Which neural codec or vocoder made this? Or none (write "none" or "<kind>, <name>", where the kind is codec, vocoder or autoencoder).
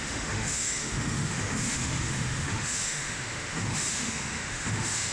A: autoencoder, DAC-VAE